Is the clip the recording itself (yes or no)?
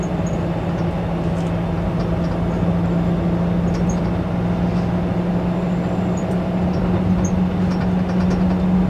yes